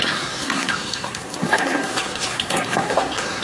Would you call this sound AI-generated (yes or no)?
yes